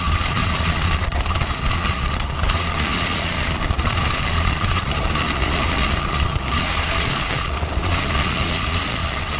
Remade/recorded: remade